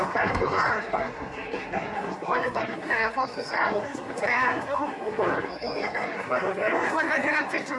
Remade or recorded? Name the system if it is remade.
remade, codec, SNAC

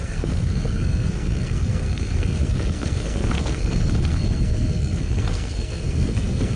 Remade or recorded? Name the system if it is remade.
remade, codec, SNAC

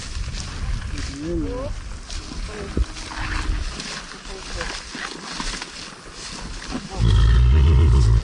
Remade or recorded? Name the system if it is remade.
recorded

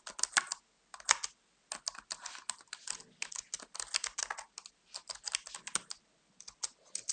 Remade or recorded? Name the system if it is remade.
recorded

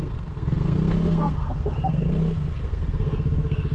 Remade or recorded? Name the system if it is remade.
remade, codec, SNAC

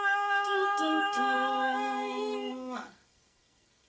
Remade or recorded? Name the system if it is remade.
remade, codec, SNAC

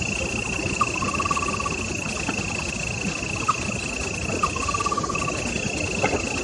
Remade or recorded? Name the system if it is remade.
recorded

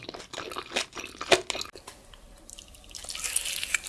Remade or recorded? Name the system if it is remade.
recorded